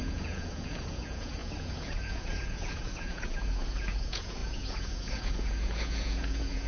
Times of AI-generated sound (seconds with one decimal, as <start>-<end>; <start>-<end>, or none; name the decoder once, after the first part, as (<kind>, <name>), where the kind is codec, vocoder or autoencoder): 0.0-6.7 (vocoder, Vocos)